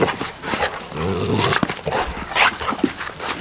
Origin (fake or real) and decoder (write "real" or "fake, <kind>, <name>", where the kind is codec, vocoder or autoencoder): real